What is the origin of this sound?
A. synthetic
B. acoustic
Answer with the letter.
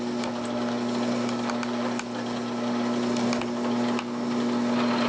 B